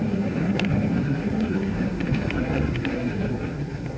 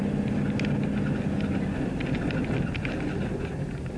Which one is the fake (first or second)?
first